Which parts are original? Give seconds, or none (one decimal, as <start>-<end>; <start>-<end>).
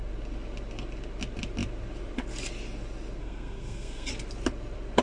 0.0-3.2; 4.1-5.0